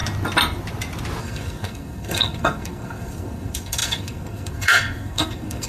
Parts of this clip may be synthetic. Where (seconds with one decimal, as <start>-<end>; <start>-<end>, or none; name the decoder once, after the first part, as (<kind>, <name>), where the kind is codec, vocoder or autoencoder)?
1.2-5.7 (codec, SNAC)